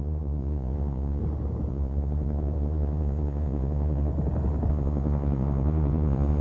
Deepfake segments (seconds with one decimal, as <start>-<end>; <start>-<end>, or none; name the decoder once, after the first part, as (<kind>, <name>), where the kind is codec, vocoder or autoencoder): 0.0-1.2 (vocoder, Vocos); 1.7-4.1; 4.7-6.4